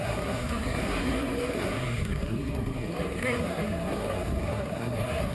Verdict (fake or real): fake